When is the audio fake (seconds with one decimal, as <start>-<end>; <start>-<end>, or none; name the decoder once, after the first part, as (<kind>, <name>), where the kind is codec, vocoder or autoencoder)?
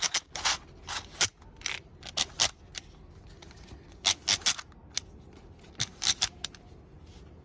none